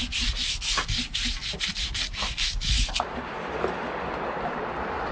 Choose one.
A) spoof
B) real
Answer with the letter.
B